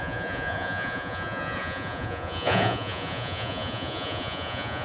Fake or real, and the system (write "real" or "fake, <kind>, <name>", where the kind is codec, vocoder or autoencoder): fake, vocoder, Vocos